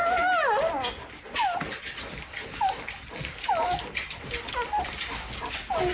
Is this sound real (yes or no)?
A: yes